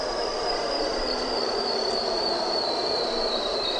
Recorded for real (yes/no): no